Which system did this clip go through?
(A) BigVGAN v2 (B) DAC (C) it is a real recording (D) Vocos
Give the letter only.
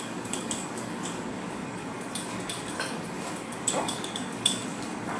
B